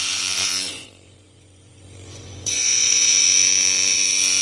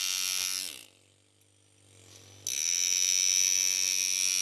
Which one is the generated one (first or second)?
first